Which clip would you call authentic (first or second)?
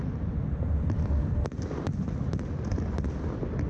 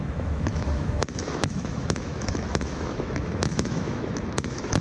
first